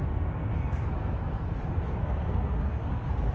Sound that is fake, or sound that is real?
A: fake